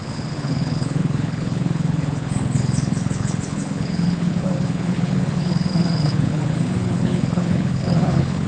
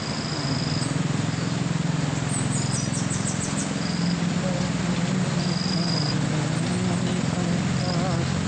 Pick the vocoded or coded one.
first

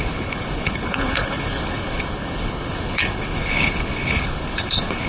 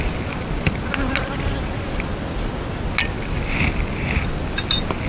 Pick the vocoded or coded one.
first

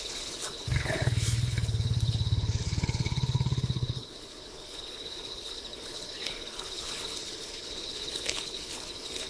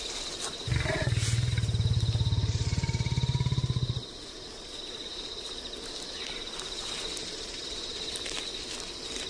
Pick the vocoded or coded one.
first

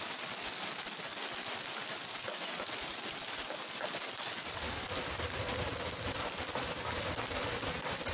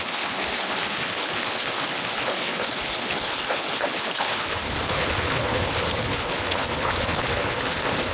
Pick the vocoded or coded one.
second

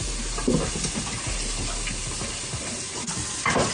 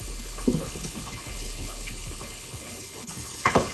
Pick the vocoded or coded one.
second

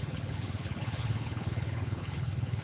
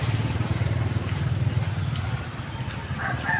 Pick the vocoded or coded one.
first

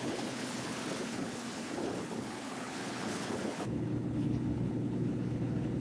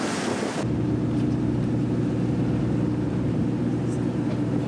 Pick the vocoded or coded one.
first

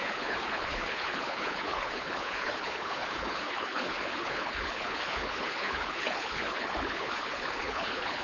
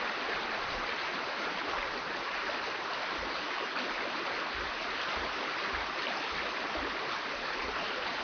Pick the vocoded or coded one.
first